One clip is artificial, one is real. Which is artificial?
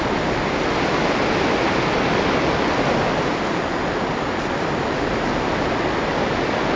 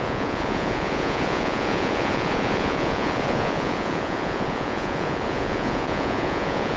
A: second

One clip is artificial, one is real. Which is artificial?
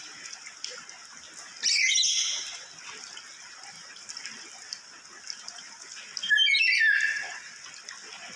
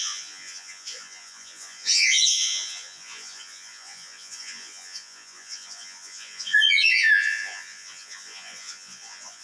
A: second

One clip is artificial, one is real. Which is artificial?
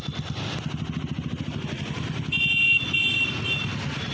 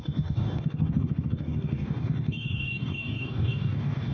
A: second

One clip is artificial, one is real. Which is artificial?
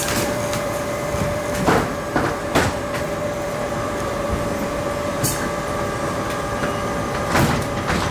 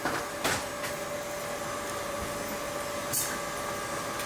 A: first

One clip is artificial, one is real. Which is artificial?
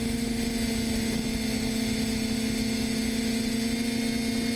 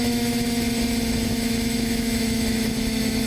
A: second